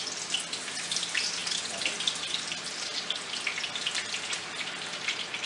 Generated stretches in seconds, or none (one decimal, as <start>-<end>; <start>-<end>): none